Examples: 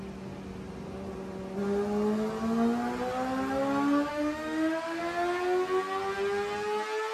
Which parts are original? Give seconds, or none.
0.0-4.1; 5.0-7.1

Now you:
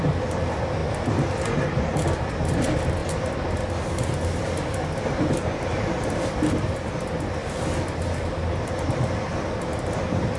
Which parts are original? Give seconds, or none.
0.0-10.4

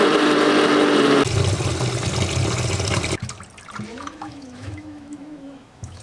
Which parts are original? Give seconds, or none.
0.0-3.9

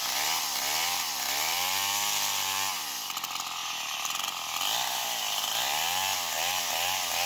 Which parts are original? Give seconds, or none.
0.0-7.3

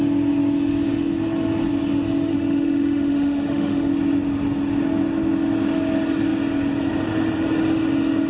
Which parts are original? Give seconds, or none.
0.0-2.3; 3.9-8.3

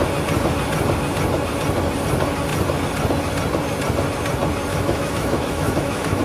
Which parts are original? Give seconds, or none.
0.0-4.7

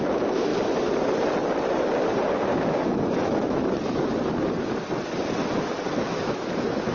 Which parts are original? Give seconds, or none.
0.5-2.6; 3.6-6.0